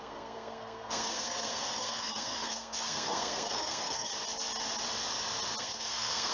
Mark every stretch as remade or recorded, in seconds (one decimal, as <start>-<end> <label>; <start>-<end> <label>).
0.0-4.1 remade; 4.1-5.6 recorded; 5.6-6.3 remade

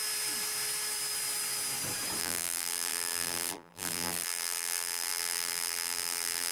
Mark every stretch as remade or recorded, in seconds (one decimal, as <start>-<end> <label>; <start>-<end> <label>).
0.0-2.2 recorded; 2.2-6.5 remade

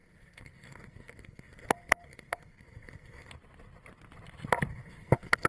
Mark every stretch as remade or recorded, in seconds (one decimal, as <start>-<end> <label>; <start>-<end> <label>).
0.0-3.3 remade; 3.3-4.7 recorded; 4.7-5.5 remade

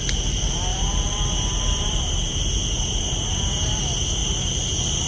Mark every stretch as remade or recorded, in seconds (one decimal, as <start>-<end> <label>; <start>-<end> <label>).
0.0-0.7 recorded; 0.7-3.8 remade; 3.8-4.2 recorded; 4.2-5.1 remade

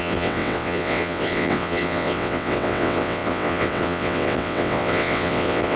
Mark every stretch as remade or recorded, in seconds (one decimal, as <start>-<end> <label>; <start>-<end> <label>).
0.0-5.8 remade

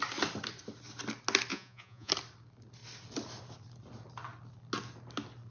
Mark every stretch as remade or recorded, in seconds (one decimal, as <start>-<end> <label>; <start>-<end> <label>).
0.0-1.5 recorded; 1.5-2.1 remade; 2.1-5.5 recorded